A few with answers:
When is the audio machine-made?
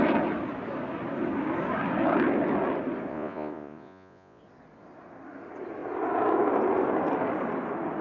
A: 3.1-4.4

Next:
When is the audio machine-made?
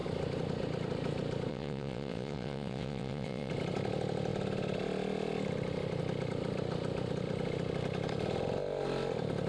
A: 1.5-3.5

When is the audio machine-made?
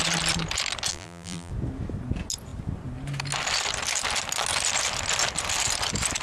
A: 0.9-1.5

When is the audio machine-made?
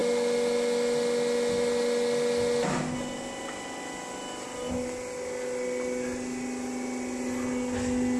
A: none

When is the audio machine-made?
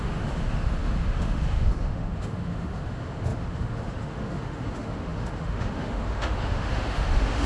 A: 0.0-7.5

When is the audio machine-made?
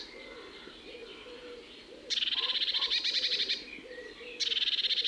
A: 1.0-4.1